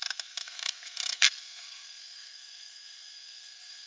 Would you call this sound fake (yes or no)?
yes